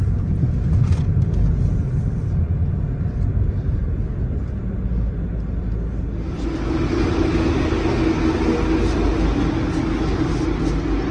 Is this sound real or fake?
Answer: real